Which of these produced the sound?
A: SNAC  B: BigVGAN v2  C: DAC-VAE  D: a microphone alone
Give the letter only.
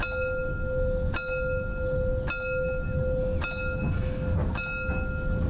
D